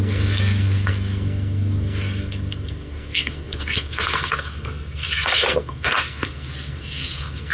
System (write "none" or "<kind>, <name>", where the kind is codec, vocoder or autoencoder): codec, SNAC